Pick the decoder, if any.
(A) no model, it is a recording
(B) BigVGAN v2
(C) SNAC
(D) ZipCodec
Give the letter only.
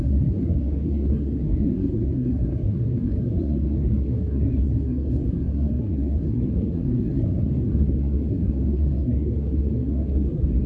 C